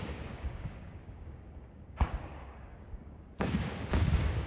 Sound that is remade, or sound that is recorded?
remade